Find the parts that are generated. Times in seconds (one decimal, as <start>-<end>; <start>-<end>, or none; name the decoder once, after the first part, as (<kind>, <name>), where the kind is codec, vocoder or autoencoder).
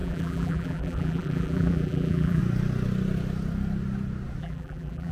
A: 0.0-2.4 (vocoder, BigVGAN v2); 4.4-5.1